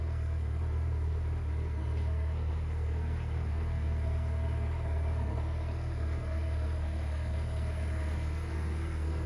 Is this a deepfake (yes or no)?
yes